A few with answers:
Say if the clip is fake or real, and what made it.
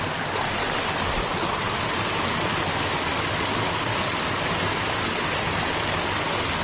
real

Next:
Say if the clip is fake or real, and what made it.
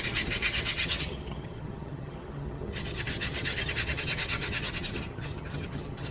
fake, vocoder, HiFi-GAN